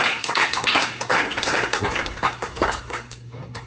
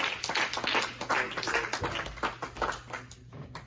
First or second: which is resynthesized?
first